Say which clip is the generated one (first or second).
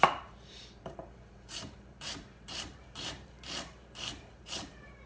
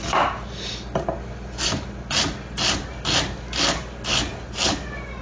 first